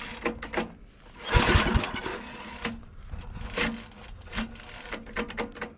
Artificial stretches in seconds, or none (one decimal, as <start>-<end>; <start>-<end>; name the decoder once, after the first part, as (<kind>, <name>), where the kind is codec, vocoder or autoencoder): 2.1-2.6 (vocoder, Vocos)